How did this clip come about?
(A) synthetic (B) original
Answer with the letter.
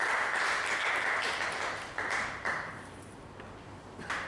B